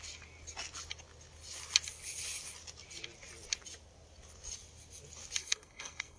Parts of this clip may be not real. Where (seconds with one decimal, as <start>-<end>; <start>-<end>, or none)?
5.4-6.2